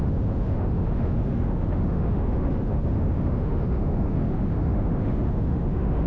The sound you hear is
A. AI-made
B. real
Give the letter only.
A